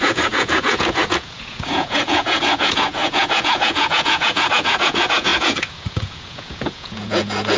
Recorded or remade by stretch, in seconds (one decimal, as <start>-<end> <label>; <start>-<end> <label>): 0.0-7.6 remade